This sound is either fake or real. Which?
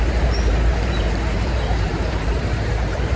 fake